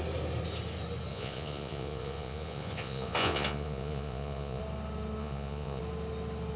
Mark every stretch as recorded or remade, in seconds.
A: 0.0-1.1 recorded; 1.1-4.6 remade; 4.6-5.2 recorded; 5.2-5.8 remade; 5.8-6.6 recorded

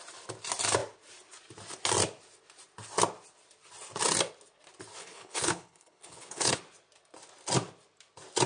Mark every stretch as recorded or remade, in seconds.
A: 0.0-5.0 recorded; 5.0-6.6 remade; 6.6-8.5 recorded